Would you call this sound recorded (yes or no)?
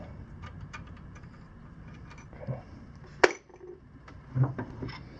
yes